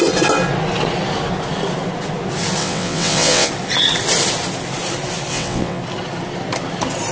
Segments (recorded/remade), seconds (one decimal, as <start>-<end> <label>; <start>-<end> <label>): 0.0-2.6 recorded; 2.6-3.5 remade; 3.5-5.3 recorded; 5.3-5.8 remade; 5.8-7.1 recorded